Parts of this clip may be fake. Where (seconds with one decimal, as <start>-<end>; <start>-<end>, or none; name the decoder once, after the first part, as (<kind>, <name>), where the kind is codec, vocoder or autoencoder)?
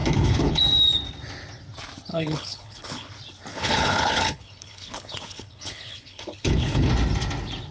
0.0-0.6 (codec, HILCodec); 2.1-3.1; 3.5-6.9